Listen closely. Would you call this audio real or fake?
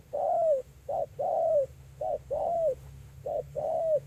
fake